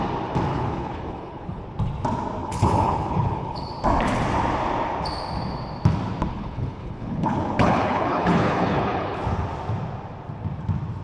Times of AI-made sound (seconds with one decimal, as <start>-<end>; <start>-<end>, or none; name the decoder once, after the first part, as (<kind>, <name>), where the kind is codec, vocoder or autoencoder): 0.5-1.6 (codec, HILCodec); 2.4-3.7; 6.3-9.2